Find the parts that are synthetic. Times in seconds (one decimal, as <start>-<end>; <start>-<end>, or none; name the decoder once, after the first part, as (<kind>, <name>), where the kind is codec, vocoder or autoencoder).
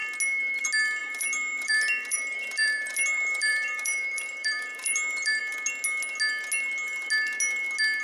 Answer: 1.0-5.4 (vocoder, BigVGAN v2)